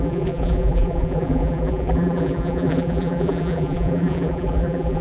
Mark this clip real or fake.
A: fake